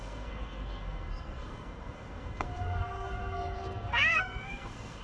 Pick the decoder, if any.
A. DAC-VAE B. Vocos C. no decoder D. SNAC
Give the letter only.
D